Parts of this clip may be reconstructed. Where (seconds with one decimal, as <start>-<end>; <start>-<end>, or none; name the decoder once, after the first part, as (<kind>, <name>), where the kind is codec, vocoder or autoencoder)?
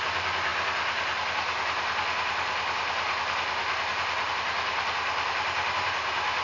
none